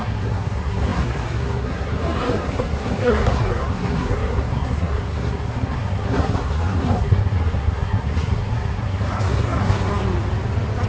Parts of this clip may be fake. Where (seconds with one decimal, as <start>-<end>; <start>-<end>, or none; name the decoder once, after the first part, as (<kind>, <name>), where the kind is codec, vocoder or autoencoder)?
0.0-9.9 (codec, SNAC)

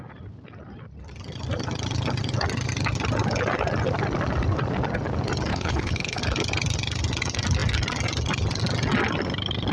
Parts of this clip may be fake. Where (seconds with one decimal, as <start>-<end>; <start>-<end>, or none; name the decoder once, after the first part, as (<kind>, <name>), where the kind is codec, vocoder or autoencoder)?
5.5-6.2 (codec, HILCodec)

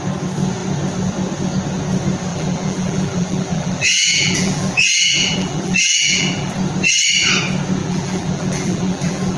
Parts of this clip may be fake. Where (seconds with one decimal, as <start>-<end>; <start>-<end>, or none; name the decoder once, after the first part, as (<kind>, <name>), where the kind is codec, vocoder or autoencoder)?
2.3-6.5 (vocoder, BigVGAN v2); 7.8-9.4

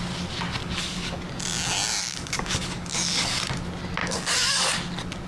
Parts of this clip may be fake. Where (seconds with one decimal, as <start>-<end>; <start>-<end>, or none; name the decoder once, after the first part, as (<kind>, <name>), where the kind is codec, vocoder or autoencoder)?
0.6-1.2 (codec, DAC); 2.0-3.4; 4.0-4.7

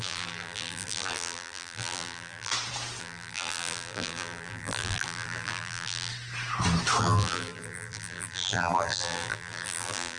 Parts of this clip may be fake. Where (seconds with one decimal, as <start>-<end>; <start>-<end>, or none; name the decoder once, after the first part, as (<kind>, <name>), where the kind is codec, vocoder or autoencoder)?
0.0-2.5 (vocoder, BigVGAN v2); 3.0-6.1; 7.0-10.2